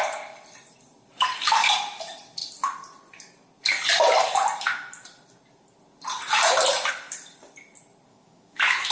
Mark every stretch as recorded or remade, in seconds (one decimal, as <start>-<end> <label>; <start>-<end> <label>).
0.0-8.1 recorded; 8.1-8.9 remade